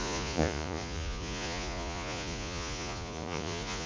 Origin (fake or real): fake